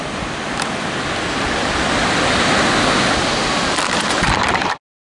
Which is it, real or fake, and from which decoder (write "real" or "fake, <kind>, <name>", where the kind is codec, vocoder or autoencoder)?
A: real